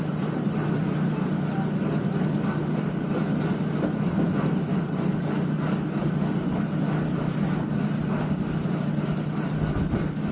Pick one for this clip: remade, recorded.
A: recorded